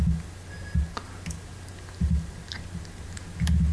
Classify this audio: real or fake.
real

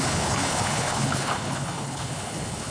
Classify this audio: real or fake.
fake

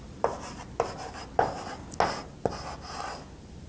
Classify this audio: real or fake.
real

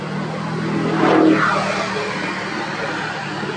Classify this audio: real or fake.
real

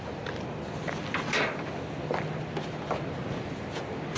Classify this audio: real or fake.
real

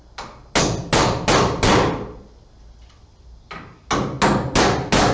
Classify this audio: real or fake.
real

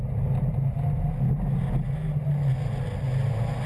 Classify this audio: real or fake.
real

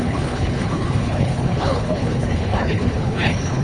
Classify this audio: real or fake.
fake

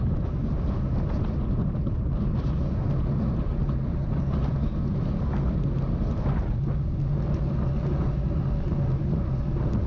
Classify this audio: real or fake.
real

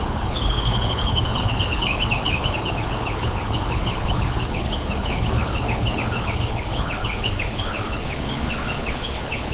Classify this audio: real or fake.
fake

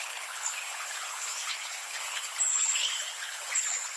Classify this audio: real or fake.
fake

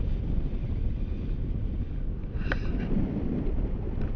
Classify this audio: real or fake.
real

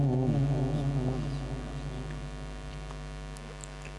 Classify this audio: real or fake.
real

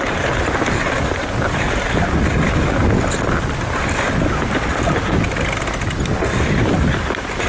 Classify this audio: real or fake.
real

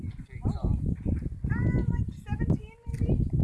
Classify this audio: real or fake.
real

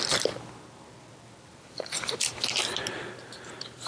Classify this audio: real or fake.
real